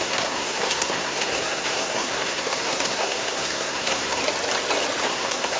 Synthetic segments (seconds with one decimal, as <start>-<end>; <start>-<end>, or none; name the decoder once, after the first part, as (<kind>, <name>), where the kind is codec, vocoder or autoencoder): 0.0-4.2 (codec, SNAC); 5.0-5.6